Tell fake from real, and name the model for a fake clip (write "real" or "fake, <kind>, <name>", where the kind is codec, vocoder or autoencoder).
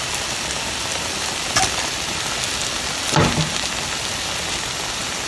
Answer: real